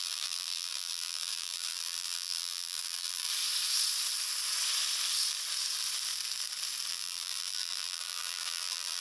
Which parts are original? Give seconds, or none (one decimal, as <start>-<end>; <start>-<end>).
3.3-6.9